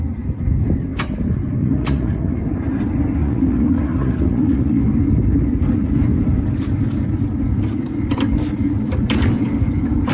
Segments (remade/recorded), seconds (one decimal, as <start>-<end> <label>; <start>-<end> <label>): 0.0-1.6 recorded; 1.6-2.4 remade; 2.4-3.2 recorded; 3.2-4.8 remade; 4.8-10.1 recorded